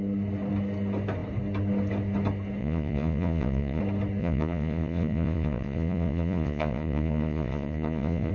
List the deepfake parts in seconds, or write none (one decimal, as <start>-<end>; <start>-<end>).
2.6-3.8; 4.2-8.3